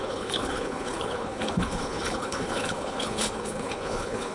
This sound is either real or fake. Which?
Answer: fake